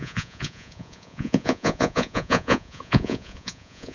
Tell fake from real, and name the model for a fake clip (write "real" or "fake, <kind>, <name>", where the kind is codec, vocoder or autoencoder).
fake, vocoder, Vocos